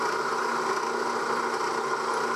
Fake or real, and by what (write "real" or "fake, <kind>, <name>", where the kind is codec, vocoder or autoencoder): real